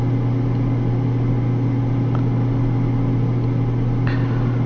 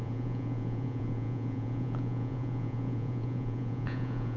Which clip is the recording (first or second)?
first